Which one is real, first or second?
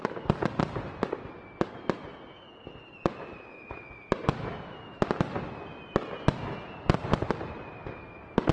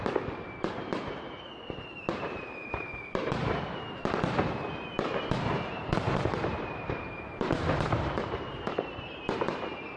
first